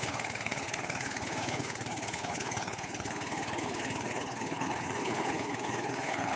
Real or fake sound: fake